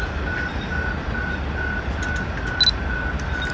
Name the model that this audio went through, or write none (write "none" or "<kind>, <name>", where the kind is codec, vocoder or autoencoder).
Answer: none